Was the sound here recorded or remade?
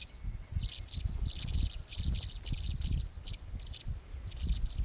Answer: recorded